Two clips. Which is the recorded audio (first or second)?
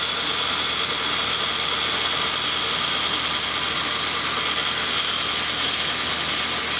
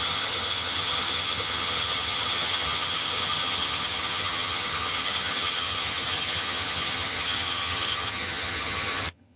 first